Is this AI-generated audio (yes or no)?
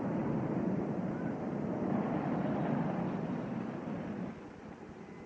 no